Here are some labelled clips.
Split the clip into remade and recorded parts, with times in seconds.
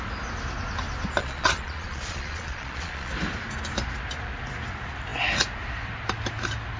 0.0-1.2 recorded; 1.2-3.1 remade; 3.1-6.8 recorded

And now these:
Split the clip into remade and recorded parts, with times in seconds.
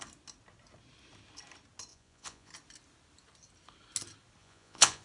0.0-1.9 recorded; 1.9-2.5 remade; 2.5-4.4 recorded; 4.4-5.0 remade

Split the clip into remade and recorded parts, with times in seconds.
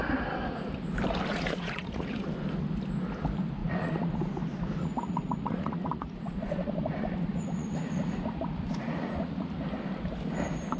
0.0-1.3 recorded; 1.3-2.3 remade; 2.3-3.6 recorded; 3.6-4.3 remade; 4.3-4.8 recorded; 4.8-9.6 remade; 9.6-10.8 recorded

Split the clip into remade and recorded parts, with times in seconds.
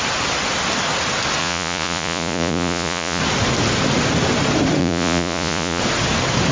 0.0-1.4 recorded; 1.4-3.2 remade; 3.2-4.8 recorded; 4.8-5.8 remade; 5.8-6.5 recorded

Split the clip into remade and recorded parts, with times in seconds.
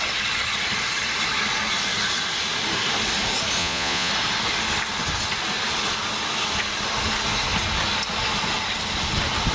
0.0-3.6 recorded; 3.6-4.1 remade; 4.1-9.5 recorded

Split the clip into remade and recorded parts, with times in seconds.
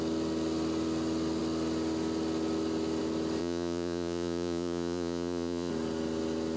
0.0-3.4 recorded; 3.4-5.7 remade; 5.7-6.6 recorded